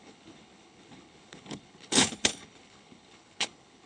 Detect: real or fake fake